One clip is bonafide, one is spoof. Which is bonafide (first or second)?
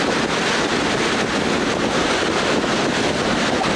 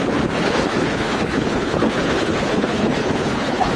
first